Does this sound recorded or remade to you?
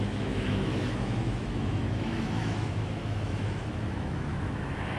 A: remade